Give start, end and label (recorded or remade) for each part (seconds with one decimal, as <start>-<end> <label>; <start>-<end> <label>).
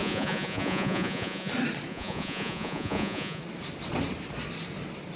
0.0-1.5 remade; 1.5-1.9 recorded; 1.9-3.4 remade; 3.4-5.2 recorded